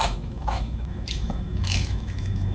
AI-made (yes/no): yes